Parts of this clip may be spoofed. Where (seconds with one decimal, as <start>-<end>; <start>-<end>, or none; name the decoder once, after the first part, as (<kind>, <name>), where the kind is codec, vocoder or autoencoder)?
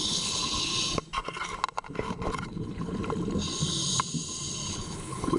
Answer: 0.0-0.7 (codec, HILCodec); 2.5-3.0; 4.7-5.4